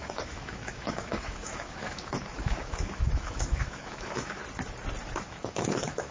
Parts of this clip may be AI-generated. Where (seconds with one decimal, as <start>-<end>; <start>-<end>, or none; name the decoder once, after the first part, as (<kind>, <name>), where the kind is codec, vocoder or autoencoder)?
0.0-4.4 (autoencoder, DAC-VAE); 5.2-6.1